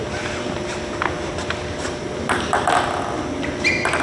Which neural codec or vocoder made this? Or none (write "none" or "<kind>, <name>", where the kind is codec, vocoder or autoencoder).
none